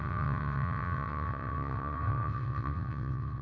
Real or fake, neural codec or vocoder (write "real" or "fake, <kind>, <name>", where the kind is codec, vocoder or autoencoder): fake, vocoder, WaveNeXt